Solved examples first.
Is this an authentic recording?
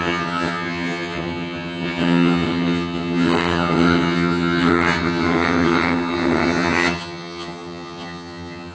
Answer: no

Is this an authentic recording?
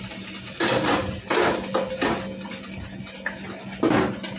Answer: yes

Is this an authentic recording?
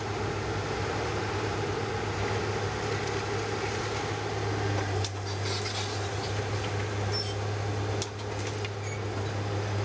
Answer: yes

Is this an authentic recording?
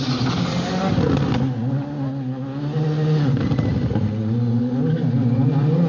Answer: yes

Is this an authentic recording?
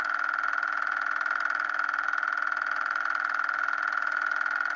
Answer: yes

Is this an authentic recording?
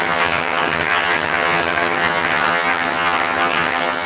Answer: no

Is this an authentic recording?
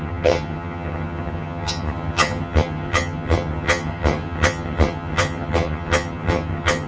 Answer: no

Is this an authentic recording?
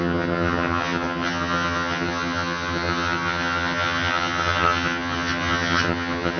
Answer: no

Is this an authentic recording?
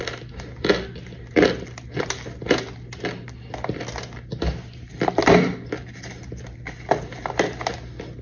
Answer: yes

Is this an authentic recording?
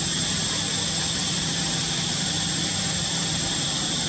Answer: yes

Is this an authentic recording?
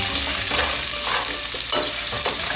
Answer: yes